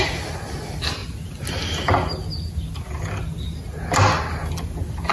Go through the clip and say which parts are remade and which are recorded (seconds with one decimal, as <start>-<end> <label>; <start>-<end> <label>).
0.0-5.1 recorded